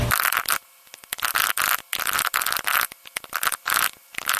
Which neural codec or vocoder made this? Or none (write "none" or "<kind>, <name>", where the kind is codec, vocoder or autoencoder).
none